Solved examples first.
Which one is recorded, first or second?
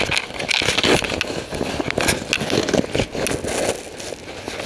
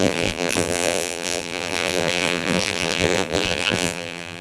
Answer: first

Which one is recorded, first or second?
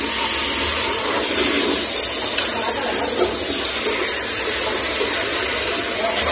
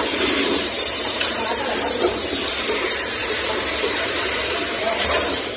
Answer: first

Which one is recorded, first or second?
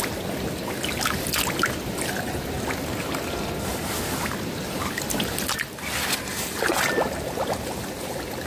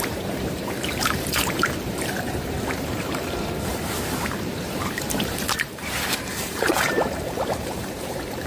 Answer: first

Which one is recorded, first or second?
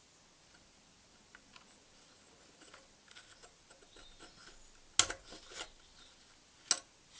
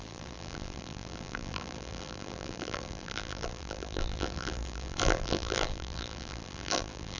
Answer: first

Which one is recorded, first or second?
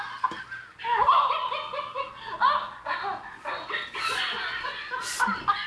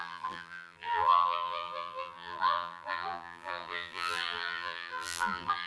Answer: first